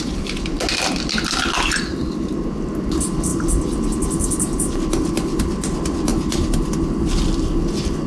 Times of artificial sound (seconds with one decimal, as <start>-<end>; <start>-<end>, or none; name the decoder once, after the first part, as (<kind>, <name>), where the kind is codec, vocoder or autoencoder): 6.1-6.7 (vocoder, BigVGAN v2)